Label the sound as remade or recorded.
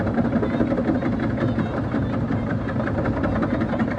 recorded